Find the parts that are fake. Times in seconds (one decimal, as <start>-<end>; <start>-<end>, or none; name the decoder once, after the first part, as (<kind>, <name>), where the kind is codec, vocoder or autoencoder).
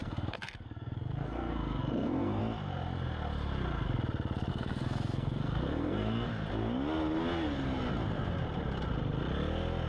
0.0-2.4 (codec, SNAC); 4.5-6.3